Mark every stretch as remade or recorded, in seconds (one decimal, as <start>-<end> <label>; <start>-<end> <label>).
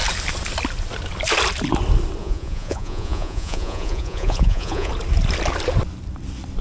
0.0-2.2 recorded; 2.2-4.9 remade; 4.9-6.6 recorded